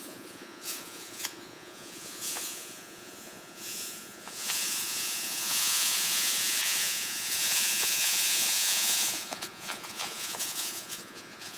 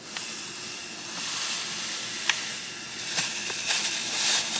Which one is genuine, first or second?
second